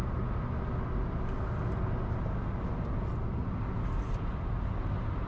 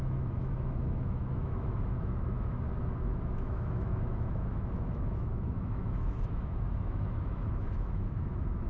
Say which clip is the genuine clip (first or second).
first